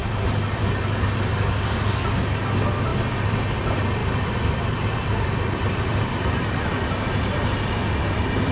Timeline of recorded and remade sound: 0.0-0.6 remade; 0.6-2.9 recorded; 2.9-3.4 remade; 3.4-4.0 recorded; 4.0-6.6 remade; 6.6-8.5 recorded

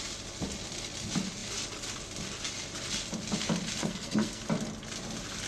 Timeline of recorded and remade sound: 0.0-3.8 recorded; 3.8-4.4 remade; 4.4-5.5 recorded